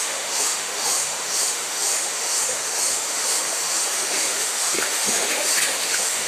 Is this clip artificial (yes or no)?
yes